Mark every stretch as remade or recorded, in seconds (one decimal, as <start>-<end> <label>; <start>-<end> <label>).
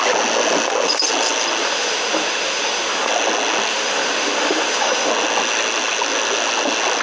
0.0-1.6 recorded; 1.6-3.1 remade; 3.1-3.7 recorded; 3.7-5.1 remade; 5.1-7.0 recorded